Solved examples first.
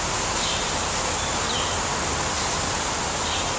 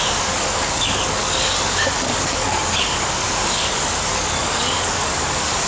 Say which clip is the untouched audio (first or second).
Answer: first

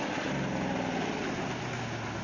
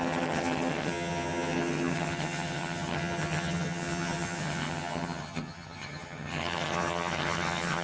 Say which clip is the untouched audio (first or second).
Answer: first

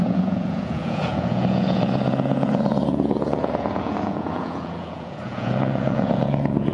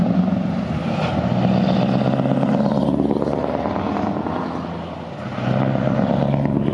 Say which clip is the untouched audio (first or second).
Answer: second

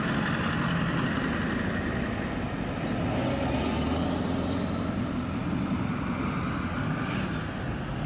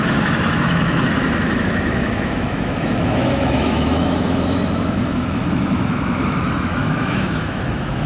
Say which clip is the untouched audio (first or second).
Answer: first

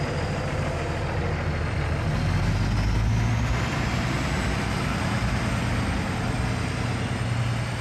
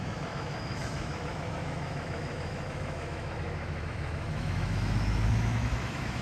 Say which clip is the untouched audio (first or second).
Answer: first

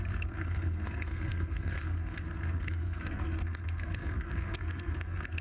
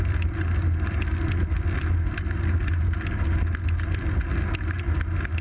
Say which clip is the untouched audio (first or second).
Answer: second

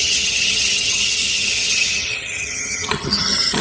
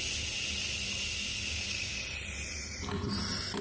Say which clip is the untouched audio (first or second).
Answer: second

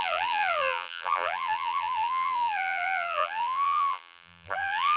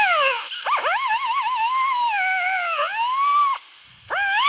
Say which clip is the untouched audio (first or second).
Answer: second